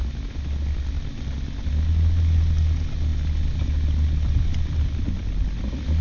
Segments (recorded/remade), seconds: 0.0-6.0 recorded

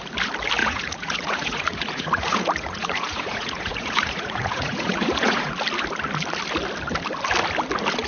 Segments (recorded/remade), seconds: 0.0-0.6 recorded; 0.6-5.5 remade; 5.5-8.1 recorded